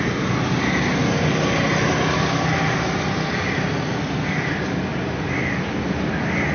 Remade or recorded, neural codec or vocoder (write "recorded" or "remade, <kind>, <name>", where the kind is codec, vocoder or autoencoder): recorded